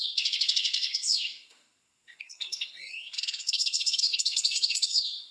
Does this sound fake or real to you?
fake